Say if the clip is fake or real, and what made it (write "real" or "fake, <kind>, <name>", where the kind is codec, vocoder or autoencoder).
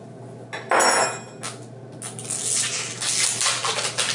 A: real